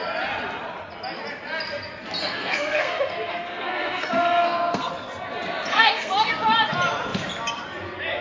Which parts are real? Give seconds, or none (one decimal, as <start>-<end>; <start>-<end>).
0.0-2.2; 4.9-5.7; 6.3-8.2